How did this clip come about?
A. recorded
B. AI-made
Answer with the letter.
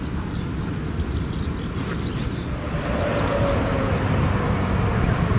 A